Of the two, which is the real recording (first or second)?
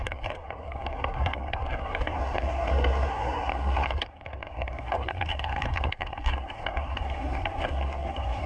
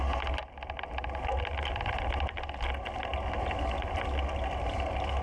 second